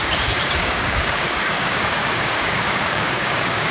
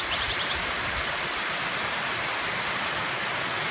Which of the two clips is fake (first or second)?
first